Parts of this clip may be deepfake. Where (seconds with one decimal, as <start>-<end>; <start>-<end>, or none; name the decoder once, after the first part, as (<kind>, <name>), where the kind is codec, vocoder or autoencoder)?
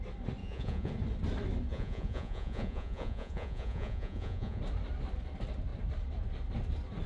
0.4-0.9 (vocoder, Vocos); 1.7-4.6